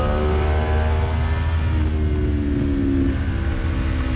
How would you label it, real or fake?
real